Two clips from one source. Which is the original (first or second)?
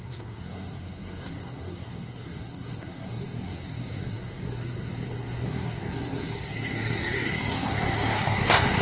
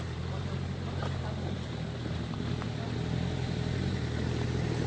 second